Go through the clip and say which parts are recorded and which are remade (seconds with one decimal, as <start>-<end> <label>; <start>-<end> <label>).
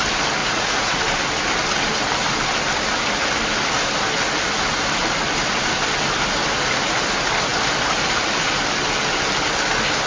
0.0-0.4 recorded; 0.4-1.0 remade; 1.0-10.1 recorded